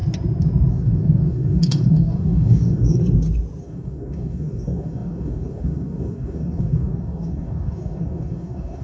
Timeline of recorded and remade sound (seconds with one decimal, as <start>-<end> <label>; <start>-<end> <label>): 0.0-0.7 recorded; 0.7-3.0 remade; 3.0-3.6 recorded; 3.6-8.8 remade